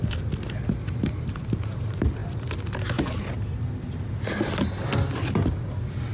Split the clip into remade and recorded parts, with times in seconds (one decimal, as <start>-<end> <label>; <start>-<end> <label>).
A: 0.0-6.1 recorded